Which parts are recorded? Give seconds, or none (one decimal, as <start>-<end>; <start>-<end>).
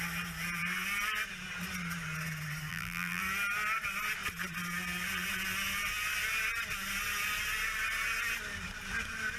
0.0-2.7; 3.2-9.4